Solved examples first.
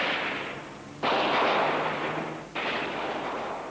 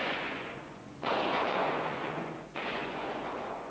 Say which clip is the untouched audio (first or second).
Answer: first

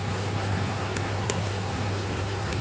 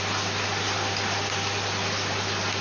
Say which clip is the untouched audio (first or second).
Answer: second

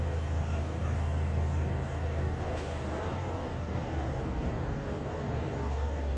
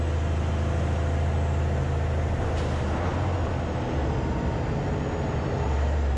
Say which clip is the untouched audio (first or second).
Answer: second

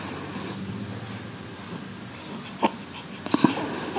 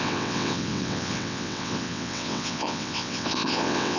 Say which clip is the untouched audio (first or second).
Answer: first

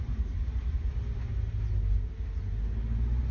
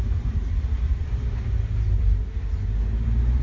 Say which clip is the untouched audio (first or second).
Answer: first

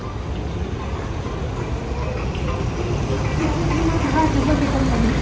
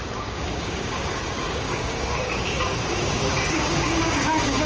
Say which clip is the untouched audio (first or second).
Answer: first